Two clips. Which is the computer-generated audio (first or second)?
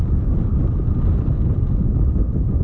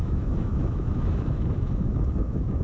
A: second